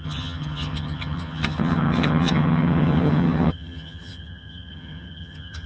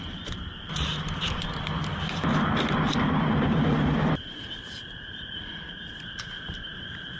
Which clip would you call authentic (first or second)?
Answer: second